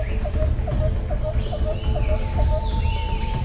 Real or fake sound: real